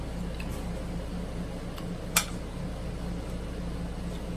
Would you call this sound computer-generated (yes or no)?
no